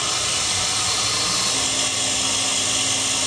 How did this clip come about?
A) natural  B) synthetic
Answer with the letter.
A